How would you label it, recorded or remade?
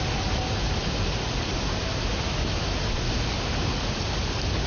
recorded